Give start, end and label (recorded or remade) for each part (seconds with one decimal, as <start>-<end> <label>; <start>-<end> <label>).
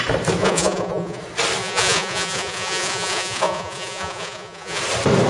0.0-0.4 recorded; 0.4-1.2 remade; 1.2-1.6 recorded; 1.6-4.8 remade; 4.8-5.3 recorded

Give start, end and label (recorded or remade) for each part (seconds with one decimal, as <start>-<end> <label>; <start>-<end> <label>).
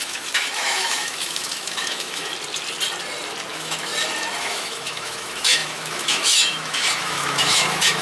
0.0-2.3 remade; 2.3-3.5 recorded; 3.5-3.9 remade; 3.9-4.4 recorded; 4.4-8.0 remade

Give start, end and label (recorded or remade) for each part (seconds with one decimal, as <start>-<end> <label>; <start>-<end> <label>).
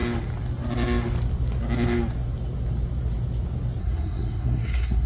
0.0-3.8 recorded; 3.8-5.1 remade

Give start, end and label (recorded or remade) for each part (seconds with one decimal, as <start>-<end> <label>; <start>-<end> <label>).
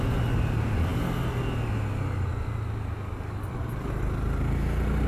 0.0-5.1 recorded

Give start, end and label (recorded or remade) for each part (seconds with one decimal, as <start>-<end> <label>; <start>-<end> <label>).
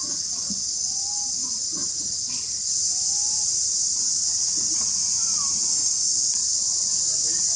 0.0-5.7 recorded; 5.7-6.3 remade; 6.3-7.6 recorded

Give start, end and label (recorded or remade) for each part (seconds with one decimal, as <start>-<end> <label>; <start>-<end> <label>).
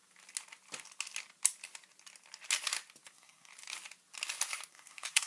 0.0-3.1 recorded; 3.1-3.5 remade; 3.5-4.7 recorded; 4.7-5.3 remade